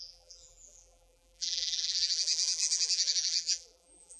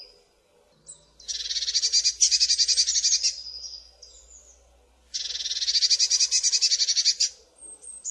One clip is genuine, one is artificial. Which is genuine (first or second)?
second